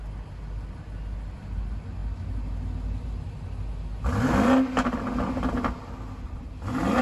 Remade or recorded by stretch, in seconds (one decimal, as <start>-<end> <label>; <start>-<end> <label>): 0.0-7.0 recorded